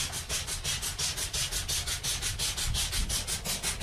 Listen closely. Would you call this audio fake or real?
real